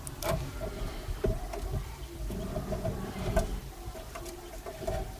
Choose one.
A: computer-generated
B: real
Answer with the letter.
B